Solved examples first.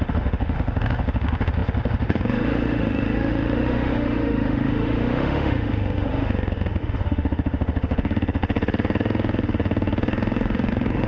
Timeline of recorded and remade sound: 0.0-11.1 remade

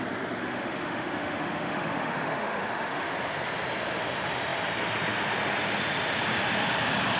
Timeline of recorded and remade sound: 0.0-0.4 recorded; 0.4-3.1 remade; 3.1-7.2 recorded

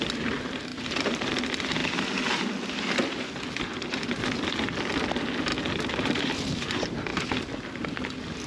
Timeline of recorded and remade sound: 0.0-8.5 recorded

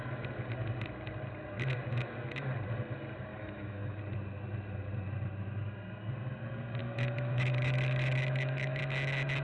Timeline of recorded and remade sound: 0.0-3.3 recorded; 3.3-4.0 remade; 4.0-6.8 recorded; 6.8-8.8 remade; 8.8-9.4 recorded